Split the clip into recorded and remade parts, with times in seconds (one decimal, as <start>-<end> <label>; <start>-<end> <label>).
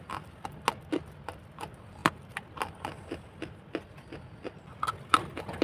0.0-5.6 recorded